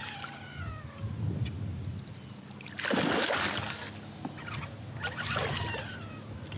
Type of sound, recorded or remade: recorded